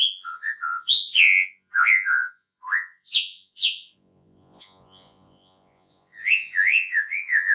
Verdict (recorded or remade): remade